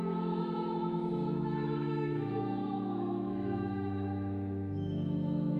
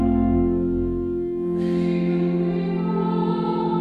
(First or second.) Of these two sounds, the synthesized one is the first